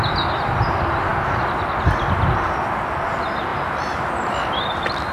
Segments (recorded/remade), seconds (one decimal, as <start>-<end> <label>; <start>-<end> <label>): 0.0-3.5 recorded; 3.5-4.1 remade; 4.1-5.1 recorded